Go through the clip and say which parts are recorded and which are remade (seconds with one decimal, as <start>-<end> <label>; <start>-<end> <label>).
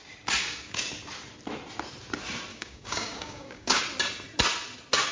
0.0-0.4 recorded; 0.4-0.9 remade; 0.9-2.5 recorded; 2.5-3.8 remade; 3.8-5.1 recorded